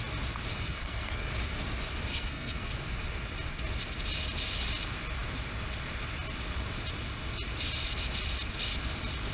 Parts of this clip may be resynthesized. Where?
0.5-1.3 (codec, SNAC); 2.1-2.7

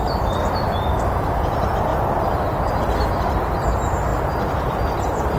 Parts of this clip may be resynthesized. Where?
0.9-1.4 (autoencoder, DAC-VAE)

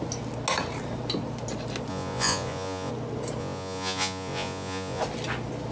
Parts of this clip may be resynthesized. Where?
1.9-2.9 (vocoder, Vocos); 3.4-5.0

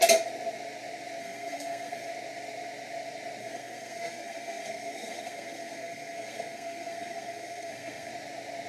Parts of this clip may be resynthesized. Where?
1.2-2.1 (codec, SNAC); 3.4-8.1